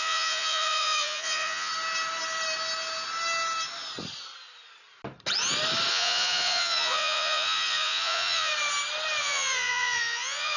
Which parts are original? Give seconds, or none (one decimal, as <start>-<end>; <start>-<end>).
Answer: 1.7-5.9; 8.5-9.2